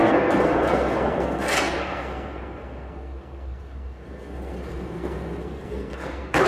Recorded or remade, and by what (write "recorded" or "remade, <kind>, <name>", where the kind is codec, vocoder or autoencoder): remade, codec, SNAC